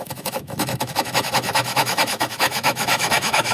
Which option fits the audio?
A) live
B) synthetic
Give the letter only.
B